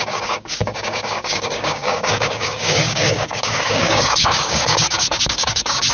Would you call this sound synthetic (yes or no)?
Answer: yes